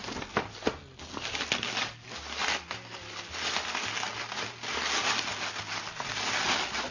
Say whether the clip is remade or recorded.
recorded